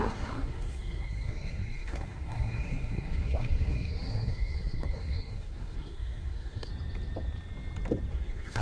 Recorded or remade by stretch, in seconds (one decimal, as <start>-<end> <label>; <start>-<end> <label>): 0.0-6.7 remade; 6.7-8.1 recorded; 8.1-8.6 remade